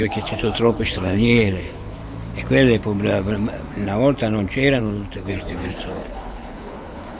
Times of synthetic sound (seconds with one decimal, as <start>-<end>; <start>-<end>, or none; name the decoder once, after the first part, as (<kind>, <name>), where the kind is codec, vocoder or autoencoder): 0.0-2.0 (codec, HILCodec); 4.8-7.2